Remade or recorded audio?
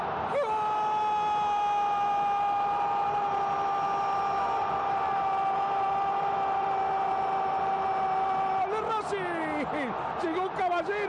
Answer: recorded